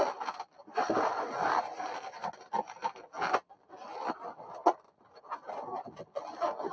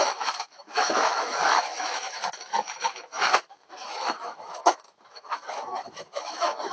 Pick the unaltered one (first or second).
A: first